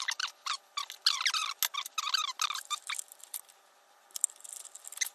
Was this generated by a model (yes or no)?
no